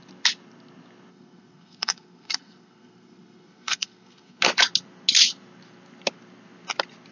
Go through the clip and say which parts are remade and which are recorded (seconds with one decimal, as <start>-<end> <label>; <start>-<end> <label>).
0.0-1.1 recorded; 1.1-4.4 remade; 4.4-7.1 recorded